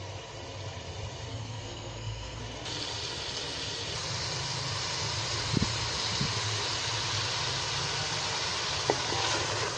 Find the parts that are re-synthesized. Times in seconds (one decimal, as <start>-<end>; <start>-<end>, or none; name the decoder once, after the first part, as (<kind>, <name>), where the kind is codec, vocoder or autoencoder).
1.3-2.4 (codec, SNAC)